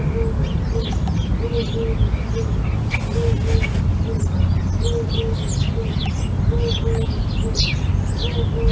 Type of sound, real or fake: real